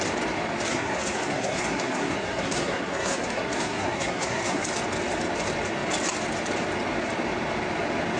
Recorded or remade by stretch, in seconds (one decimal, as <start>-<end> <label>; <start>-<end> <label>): 0.0-0.7 recorded; 0.7-4.6 remade; 4.6-8.2 recorded